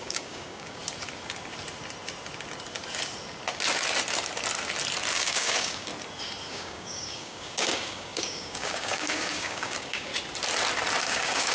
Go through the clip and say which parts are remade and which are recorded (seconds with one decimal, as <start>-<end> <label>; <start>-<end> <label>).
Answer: 0.0-0.8 remade; 0.8-5.1 recorded; 5.1-5.9 remade; 5.9-6.5 recorded; 6.5-10.1 remade; 10.1-11.0 recorded; 11.0-11.5 remade